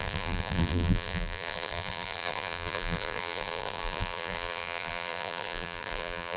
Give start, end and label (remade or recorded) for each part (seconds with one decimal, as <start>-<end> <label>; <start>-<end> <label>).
0.0-6.4 remade